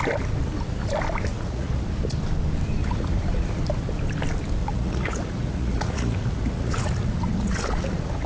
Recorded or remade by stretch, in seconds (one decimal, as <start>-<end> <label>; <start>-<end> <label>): 0.0-1.3 recorded; 1.3-1.8 remade; 1.8-2.8 recorded; 2.8-3.6 remade; 3.6-4.6 recorded; 4.6-8.3 remade

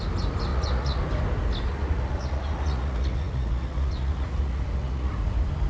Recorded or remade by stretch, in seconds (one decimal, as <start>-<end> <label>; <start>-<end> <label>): 0.0-0.5 recorded; 0.5-1.0 remade; 1.0-1.7 recorded; 1.7-5.1 remade; 5.1-5.7 recorded

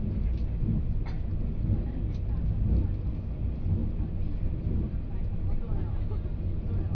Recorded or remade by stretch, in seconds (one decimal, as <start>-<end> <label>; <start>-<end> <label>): 0.0-6.9 recorded

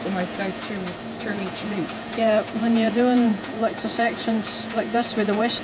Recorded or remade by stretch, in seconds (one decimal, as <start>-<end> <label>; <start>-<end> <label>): 0.0-0.6 remade; 0.6-1.2 recorded; 1.2-5.6 remade

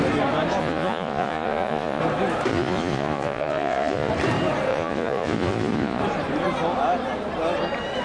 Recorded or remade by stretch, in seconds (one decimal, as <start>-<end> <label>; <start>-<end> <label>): 0.0-0.6 recorded; 0.6-2.0 remade; 2.0-2.5 recorded; 2.5-4.1 remade; 4.1-4.7 recorded; 4.7-6.0 remade; 6.0-8.0 recorded